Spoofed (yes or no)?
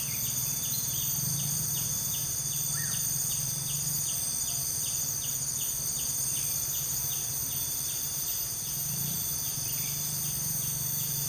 no